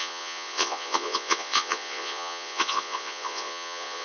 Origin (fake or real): fake